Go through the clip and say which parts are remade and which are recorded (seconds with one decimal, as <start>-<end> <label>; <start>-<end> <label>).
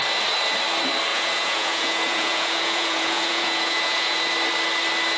0.0-1.1 recorded; 1.1-4.2 remade; 4.2-5.2 recorded